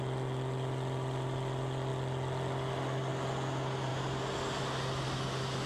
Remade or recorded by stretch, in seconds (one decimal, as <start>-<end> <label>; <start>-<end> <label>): 0.0-5.7 recorded